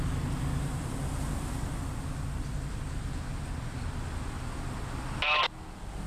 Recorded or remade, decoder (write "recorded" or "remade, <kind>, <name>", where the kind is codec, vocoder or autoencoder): recorded